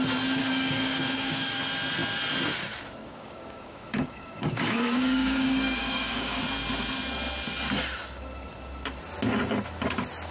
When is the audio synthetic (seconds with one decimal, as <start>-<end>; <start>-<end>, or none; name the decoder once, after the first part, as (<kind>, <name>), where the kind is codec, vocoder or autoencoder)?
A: 0.4-1.6 (codec, DAC); 3.0-6.4